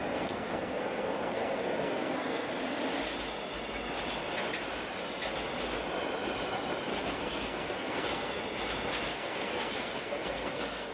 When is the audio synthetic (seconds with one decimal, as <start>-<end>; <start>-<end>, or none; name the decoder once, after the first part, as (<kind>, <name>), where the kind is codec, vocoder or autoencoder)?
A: 0.0-2.5 (codec, SNAC); 6.9-8.4; 9.1-10.9